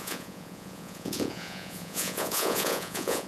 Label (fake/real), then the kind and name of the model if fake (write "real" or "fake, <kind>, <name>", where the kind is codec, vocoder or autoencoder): fake, vocoder, Vocos